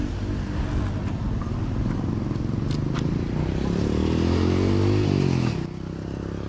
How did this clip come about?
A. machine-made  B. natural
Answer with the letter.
B